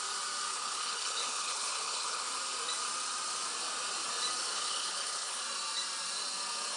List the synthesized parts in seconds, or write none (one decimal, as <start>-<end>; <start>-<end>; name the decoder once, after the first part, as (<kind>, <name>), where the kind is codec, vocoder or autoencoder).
0.5-2.3 (codec, HILCodec); 4.5-5.4